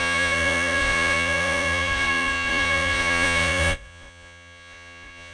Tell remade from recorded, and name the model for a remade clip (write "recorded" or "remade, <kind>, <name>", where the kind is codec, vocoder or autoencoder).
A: remade, vocoder, Vocos